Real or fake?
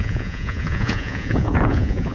fake